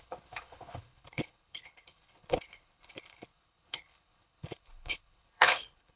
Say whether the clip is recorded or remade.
remade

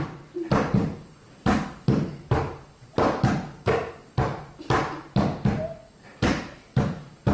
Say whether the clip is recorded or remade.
remade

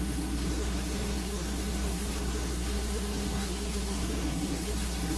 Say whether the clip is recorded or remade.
remade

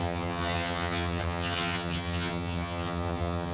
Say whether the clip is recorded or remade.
remade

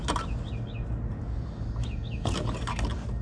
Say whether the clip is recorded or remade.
recorded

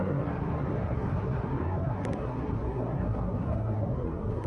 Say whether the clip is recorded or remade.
remade